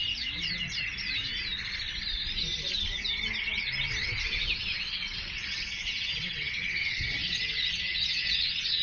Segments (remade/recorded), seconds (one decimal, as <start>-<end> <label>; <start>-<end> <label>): 0.0-4.0 recorded; 4.0-8.8 remade